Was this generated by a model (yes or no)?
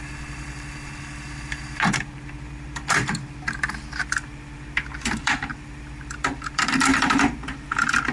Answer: yes